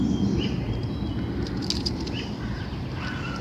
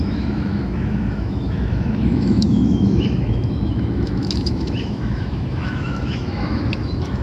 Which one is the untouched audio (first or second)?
first